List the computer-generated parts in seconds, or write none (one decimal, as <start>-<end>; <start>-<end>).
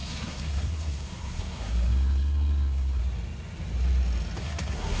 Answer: 0.0-3.0; 4.4-5.0